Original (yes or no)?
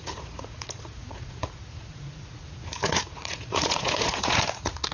no